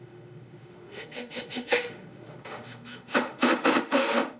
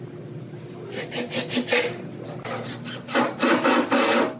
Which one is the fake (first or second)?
first